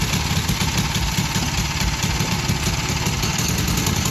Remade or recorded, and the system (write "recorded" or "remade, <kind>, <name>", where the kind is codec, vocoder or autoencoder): recorded